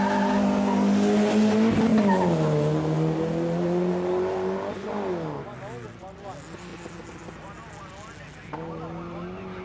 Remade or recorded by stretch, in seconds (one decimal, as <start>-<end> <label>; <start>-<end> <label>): 0.0-9.6 recorded

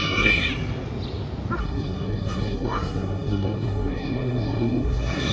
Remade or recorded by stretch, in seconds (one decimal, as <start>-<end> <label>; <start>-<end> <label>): 0.0-0.5 remade; 0.5-1.6 recorded; 1.6-5.3 remade

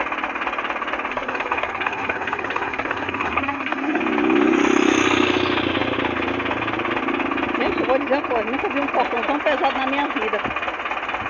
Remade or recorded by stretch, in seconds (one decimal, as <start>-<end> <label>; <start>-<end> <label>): 0.0-1.1 recorded; 1.1-4.0 remade; 4.0-11.3 recorded

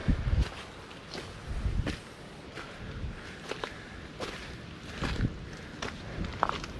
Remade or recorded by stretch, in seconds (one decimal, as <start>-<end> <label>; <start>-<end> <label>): 0.0-6.8 recorded